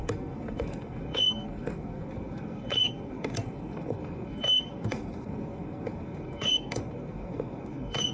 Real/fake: fake